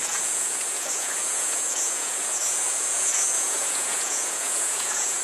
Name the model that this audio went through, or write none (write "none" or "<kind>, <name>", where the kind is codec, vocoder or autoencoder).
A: vocoder, Vocos